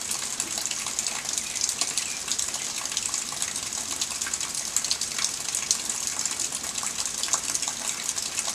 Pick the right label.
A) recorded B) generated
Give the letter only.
A